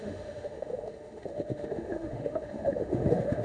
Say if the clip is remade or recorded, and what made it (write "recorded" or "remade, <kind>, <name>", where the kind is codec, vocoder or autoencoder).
remade, autoencoder, DAC-VAE